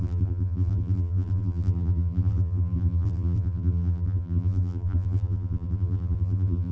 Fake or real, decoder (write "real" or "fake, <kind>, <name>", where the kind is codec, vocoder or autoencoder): fake, vocoder, BigVGAN v2